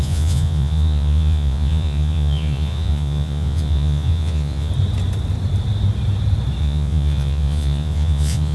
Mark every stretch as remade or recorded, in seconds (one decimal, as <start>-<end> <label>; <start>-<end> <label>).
0.0-4.7 remade; 4.7-6.6 recorded; 6.6-8.5 remade